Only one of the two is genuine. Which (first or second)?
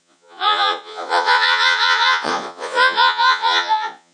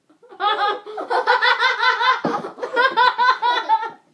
second